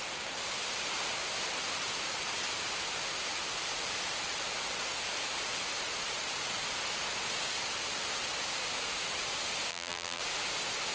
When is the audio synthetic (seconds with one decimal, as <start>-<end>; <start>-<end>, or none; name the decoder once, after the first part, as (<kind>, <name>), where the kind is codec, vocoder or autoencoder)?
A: 9.7-10.2 (vocoder, BigVGAN v2)